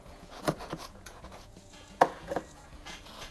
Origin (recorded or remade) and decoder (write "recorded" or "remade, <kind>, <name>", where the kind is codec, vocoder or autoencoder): remade, vocoder, Vocos